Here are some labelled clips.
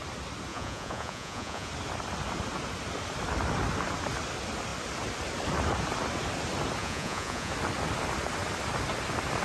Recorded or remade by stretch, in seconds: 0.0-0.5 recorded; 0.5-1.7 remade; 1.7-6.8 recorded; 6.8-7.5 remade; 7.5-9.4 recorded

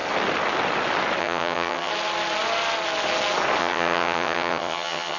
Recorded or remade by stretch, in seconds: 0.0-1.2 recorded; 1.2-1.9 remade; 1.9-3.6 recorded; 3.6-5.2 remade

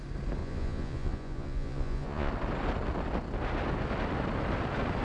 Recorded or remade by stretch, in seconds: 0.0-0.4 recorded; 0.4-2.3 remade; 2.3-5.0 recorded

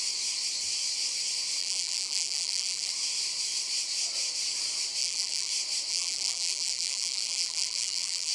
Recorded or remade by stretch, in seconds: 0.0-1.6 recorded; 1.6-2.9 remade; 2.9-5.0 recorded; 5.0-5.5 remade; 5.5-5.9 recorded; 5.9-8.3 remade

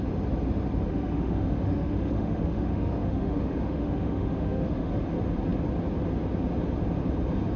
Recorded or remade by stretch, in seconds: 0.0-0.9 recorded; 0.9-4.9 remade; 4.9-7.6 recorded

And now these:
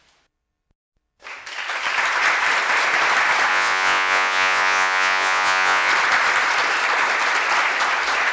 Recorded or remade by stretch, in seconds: 0.0-3.5 recorded; 3.5-5.9 remade; 5.9-8.3 recorded

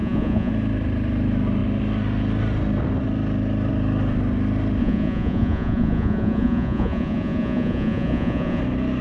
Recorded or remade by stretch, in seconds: 0.0-0.5 remade; 0.5-4.8 recorded; 4.8-8.6 remade; 8.6-9.0 recorded